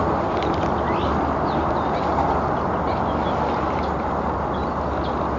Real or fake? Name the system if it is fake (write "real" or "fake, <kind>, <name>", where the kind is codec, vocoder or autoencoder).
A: real